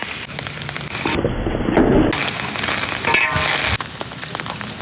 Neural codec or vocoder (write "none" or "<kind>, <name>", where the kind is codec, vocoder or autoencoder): none